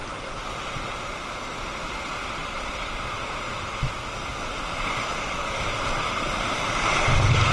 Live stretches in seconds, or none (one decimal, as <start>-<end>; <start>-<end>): 0.0-7.5